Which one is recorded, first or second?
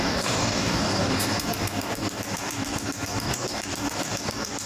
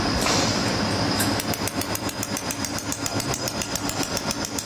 second